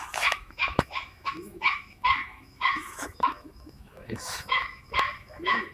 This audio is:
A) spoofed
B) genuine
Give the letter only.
A